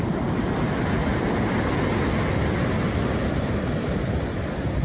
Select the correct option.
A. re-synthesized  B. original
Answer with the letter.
B